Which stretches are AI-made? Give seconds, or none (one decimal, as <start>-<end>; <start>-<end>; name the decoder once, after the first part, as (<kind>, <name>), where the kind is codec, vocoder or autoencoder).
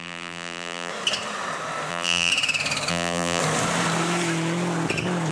0.0-0.9 (vocoder, BigVGAN v2); 1.9-2.3; 2.9-3.4